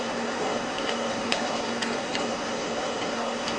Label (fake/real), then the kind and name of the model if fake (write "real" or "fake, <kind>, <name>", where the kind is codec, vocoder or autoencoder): fake, codec, SNAC